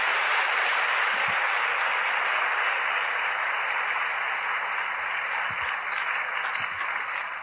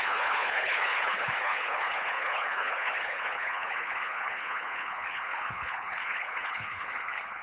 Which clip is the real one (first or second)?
first